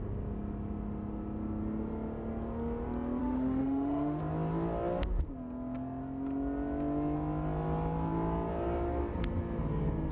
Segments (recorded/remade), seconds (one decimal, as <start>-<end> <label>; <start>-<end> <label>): 0.0-3.2 recorded; 3.2-4.2 remade; 4.2-10.1 recorded